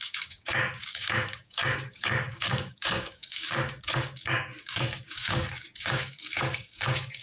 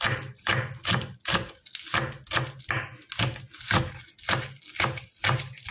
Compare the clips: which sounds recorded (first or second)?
second